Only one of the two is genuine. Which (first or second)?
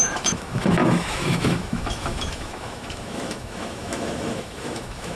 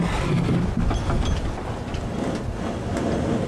second